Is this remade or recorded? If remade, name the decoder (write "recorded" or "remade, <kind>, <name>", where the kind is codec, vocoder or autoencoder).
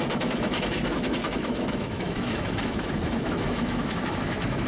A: remade, autoencoder, DAC-VAE